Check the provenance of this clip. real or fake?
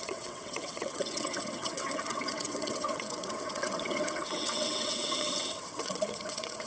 fake